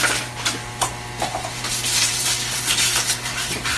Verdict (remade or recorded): remade